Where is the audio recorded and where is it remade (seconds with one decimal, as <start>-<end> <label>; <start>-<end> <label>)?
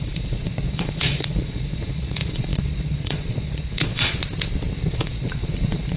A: 0.0-4.2 remade; 4.2-4.9 recorded; 4.9-6.0 remade